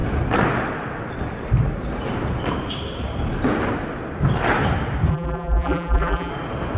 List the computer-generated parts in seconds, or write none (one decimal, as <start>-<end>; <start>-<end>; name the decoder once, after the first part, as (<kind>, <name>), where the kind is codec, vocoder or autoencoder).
5.1-6.3 (vocoder, BigVGAN v2)